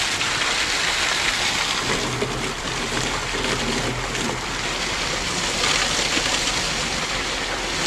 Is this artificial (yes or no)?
no